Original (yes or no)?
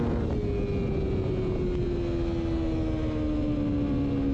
yes